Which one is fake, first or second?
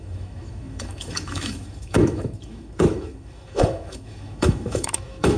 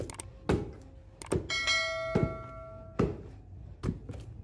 first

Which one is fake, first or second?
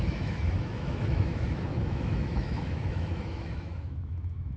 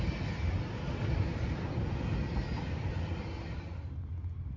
first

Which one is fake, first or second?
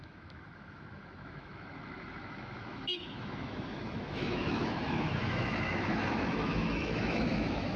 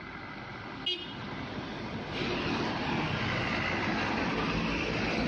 first